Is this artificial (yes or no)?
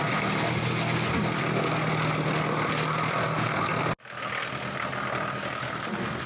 no